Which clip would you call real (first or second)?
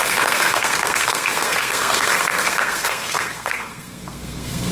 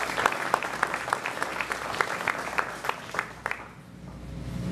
second